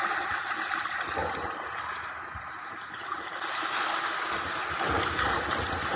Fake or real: real